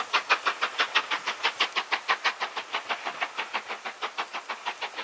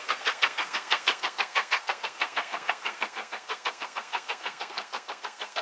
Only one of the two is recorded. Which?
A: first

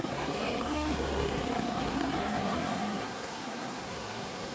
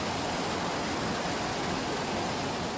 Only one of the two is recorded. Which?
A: second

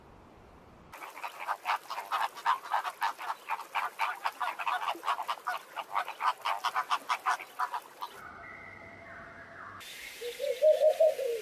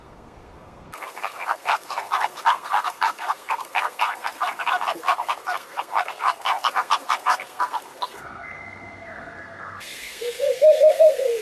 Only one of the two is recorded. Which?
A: first